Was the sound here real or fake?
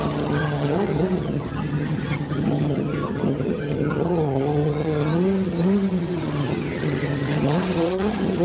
fake